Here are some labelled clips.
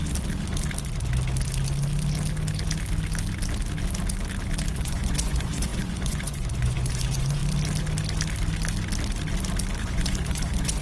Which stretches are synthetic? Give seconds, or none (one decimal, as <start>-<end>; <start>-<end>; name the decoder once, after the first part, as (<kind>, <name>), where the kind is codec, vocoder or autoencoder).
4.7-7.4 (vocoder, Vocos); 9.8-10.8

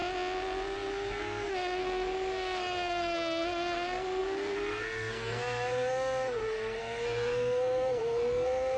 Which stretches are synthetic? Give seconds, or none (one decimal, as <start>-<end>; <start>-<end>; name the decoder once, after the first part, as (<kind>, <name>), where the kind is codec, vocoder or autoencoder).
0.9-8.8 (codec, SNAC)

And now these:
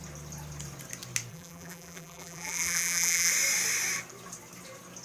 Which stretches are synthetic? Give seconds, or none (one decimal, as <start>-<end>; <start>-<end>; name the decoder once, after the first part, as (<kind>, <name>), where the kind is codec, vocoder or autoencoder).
1.3-3.3 (vocoder, BigVGAN v2)

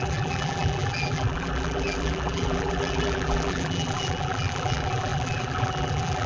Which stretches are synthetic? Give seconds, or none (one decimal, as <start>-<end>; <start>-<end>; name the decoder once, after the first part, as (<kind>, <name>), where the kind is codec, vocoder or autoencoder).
0.0-6.3 (vocoder, BigVGAN v2)